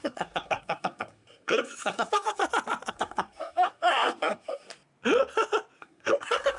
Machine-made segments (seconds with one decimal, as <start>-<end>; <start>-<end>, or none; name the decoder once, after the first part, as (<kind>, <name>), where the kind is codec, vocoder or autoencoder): 0.0-2.4 (codec, SNAC); 2.9-4.7; 5.8-6.6